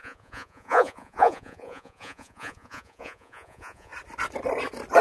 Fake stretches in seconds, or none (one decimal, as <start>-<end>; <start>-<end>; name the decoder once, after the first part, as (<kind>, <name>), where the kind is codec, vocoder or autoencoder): 0.0-3.9 (vocoder, Vocos)